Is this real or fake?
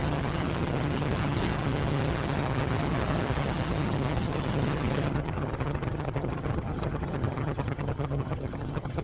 fake